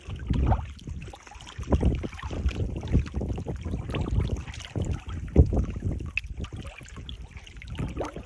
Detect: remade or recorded recorded